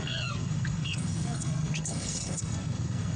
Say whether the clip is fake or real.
fake